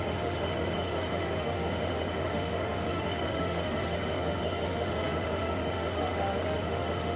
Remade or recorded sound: remade